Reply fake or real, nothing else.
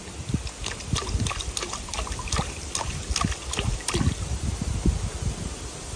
real